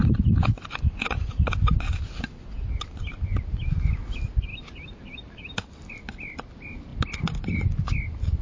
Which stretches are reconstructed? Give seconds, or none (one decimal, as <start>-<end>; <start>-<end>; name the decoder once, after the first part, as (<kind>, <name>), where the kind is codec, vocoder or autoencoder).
none

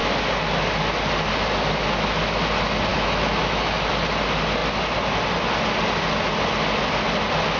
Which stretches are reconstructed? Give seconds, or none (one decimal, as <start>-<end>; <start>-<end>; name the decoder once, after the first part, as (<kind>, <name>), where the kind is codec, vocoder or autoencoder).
2.9-3.9 (autoencoder, DAC-VAE)

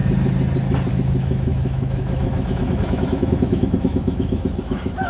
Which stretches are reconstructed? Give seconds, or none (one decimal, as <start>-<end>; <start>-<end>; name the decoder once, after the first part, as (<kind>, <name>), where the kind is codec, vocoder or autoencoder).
0.9-5.1 (autoencoder, DAC-VAE)